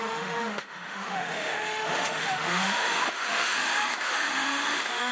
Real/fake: fake